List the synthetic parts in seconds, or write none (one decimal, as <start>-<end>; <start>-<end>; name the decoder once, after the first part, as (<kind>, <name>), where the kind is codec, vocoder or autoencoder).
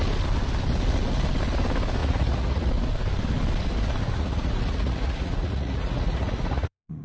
2.0-2.7 (vocoder, Vocos); 4.0-7.0